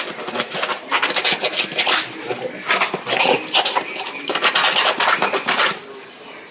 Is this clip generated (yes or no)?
no